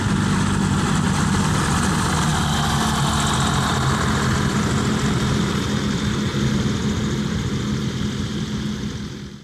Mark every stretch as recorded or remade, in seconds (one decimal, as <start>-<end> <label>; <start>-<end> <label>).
0.0-9.4 recorded